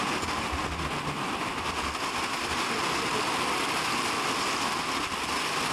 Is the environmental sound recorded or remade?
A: recorded